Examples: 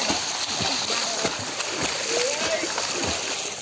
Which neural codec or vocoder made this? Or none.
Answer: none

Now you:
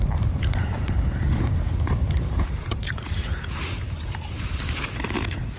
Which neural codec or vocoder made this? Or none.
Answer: vocoder, BigVGAN v2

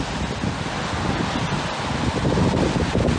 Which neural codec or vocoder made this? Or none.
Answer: none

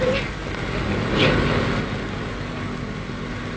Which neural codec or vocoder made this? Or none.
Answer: none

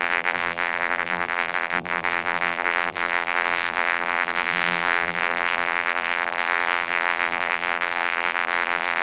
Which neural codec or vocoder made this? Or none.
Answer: vocoder, BigVGAN v2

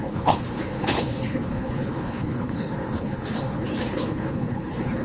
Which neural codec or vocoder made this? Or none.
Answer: codec, HILCodec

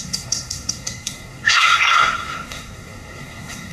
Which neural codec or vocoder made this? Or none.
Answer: codec, SNAC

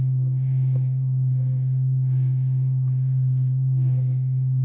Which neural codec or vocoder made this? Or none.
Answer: codec, SNAC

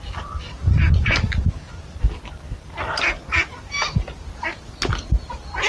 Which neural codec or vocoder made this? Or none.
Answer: none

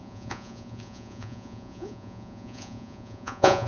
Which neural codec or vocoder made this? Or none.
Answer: vocoder, Vocos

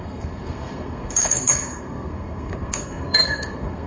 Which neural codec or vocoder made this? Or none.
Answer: codec, SNAC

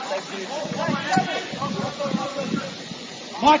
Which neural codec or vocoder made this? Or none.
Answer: vocoder, Vocos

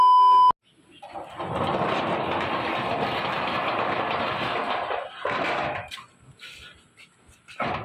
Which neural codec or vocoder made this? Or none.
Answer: none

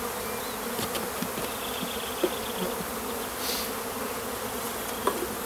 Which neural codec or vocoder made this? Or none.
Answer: none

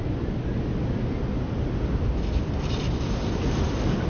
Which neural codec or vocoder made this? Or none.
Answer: none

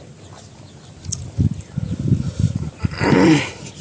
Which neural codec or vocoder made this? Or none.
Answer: none